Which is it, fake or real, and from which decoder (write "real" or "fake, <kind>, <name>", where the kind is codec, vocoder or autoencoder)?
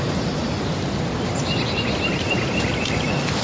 fake, vocoder, BigVGAN v2